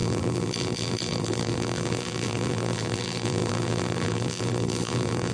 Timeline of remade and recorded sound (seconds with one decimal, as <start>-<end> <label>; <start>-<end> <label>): 0.0-5.3 remade